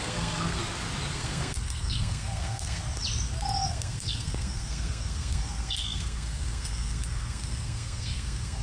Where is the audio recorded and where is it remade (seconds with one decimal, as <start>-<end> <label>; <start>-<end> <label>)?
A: 0.0-0.6 remade; 0.6-1.1 recorded; 1.1-2.8 remade; 2.8-3.7 recorded; 3.7-8.6 remade

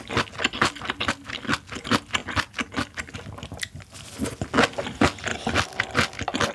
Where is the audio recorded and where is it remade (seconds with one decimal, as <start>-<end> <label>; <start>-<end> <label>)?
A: 0.0-6.5 recorded